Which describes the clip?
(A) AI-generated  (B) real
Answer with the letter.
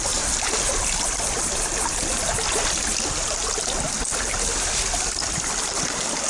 B